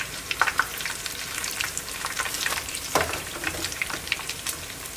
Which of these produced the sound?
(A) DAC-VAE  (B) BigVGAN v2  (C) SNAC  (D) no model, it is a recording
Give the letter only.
B